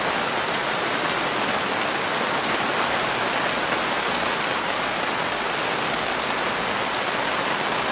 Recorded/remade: recorded